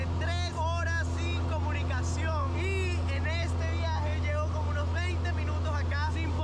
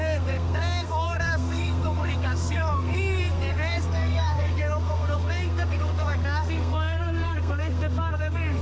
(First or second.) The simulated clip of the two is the second